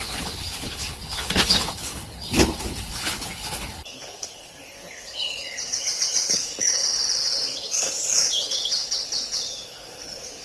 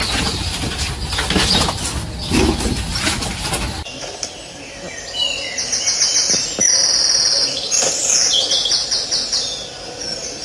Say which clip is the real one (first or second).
second